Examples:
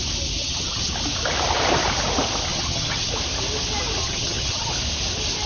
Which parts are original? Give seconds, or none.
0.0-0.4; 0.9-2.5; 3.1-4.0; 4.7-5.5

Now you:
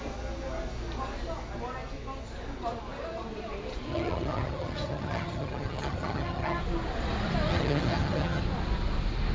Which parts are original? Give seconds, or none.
0.0-3.9; 6.6-7.5; 8.4-9.3

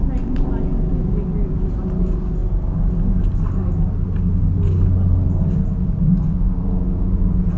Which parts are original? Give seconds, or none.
0.0-6.6

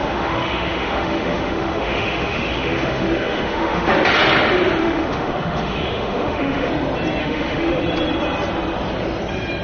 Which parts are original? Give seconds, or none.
3.9-4.8; 6.7-7.2; 7.8-9.6

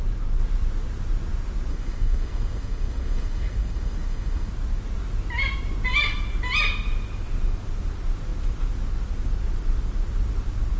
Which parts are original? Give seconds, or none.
0.0-1.7; 4.5-10.8

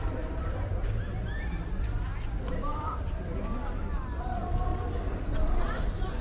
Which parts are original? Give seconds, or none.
2.1-4.2; 4.7-6.2

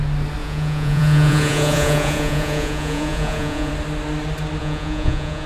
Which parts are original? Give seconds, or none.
0.0-0.4; 3.7-4.6

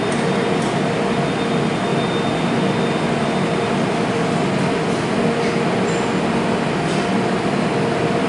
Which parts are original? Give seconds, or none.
0.0-8.3